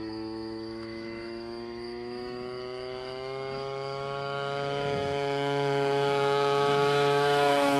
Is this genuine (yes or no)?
no